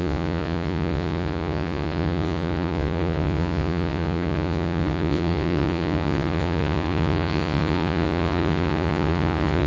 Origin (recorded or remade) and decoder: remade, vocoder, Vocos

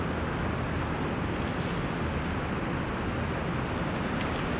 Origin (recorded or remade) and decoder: recorded